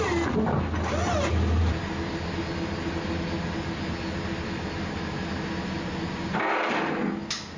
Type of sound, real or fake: real